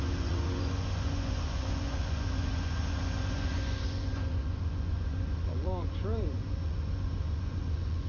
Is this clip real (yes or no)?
no